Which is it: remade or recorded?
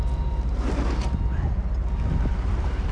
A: recorded